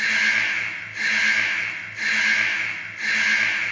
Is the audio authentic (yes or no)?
yes